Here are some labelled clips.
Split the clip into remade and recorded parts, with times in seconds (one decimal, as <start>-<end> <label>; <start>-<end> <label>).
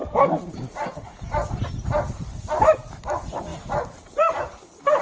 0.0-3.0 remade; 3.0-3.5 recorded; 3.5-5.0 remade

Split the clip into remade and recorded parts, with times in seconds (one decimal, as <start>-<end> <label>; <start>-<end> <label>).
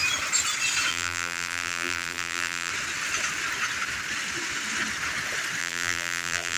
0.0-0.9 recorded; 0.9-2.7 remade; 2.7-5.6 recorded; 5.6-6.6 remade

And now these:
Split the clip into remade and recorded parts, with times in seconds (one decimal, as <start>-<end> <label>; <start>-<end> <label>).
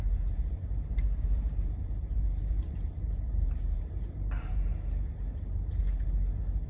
0.0-4.7 remade; 4.7-5.3 recorded; 5.3-5.8 remade; 5.8-6.7 recorded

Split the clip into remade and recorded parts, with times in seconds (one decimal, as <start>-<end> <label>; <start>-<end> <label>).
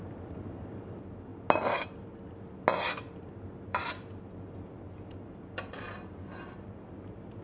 0.0-1.3 remade; 1.3-3.0 recorded; 3.0-7.4 remade